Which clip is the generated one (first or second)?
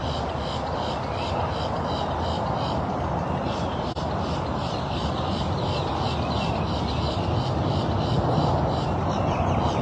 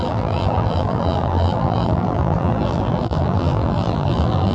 second